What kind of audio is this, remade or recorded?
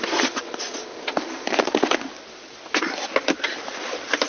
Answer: recorded